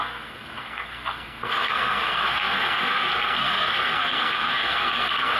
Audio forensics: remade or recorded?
remade